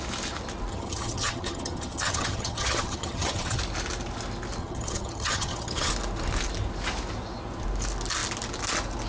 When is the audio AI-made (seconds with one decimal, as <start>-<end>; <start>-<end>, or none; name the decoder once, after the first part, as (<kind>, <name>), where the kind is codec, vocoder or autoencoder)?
0.7-3.6 (vocoder, HiFi-GAN); 4.6-5.9